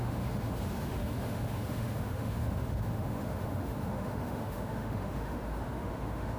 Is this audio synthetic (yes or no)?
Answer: yes